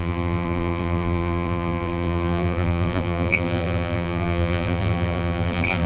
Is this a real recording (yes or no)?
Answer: no